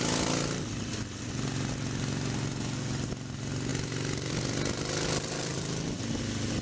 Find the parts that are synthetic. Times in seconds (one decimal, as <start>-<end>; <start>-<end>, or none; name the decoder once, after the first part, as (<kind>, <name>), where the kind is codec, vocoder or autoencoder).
none